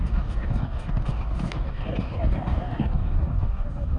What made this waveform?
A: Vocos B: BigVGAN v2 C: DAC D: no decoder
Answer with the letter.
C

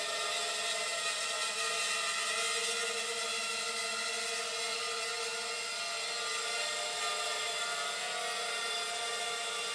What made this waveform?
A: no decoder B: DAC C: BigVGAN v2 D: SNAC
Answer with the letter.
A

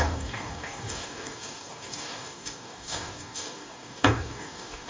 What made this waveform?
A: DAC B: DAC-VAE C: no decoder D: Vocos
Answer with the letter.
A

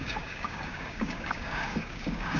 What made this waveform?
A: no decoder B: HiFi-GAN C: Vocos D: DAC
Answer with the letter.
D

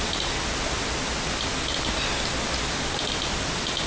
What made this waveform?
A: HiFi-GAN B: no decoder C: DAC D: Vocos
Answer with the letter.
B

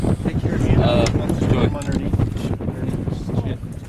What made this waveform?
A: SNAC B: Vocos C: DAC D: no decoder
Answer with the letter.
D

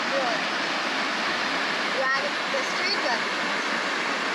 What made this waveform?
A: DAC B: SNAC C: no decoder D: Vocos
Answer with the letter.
C